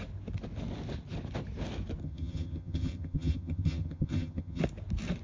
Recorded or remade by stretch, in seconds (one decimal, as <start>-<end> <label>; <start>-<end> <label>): 0.0-2.0 recorded; 2.0-4.6 remade; 4.6-5.2 recorded